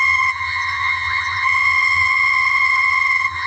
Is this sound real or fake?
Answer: fake